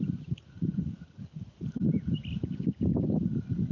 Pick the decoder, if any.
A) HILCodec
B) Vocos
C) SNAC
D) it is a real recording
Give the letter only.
D